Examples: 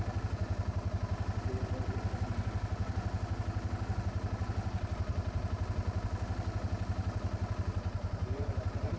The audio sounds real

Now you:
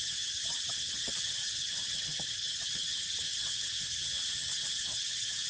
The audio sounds fake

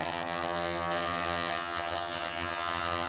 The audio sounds fake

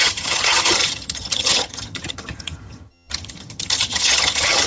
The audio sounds fake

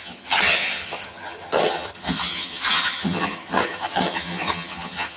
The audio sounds fake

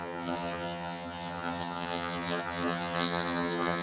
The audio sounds fake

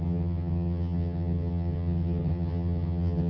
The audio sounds fake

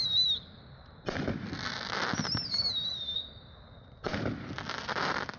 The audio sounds real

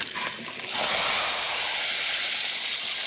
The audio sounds real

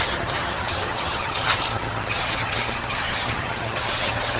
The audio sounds fake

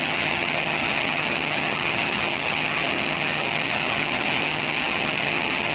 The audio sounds fake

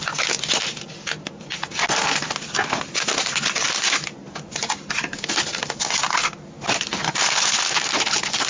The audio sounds real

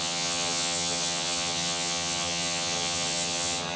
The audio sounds fake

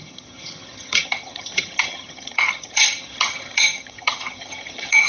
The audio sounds fake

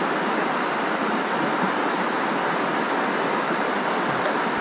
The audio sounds real